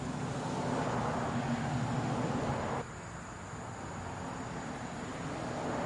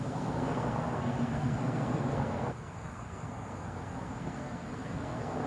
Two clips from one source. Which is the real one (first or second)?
first